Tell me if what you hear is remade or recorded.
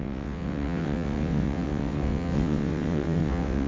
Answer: remade